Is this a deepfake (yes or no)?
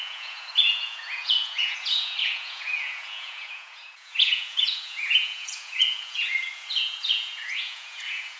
yes